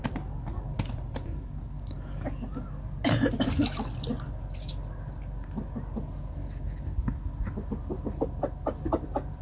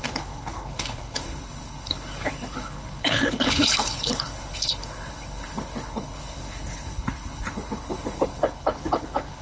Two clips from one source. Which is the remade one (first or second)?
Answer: second